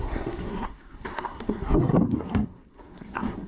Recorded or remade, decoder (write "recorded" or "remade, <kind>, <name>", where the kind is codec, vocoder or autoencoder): remade, codec, SNAC